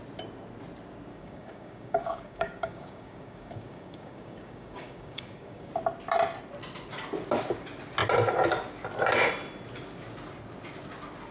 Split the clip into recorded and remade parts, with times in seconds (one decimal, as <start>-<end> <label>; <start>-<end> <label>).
0.0-1.1 recorded; 1.1-5.7 remade; 5.7-11.3 recorded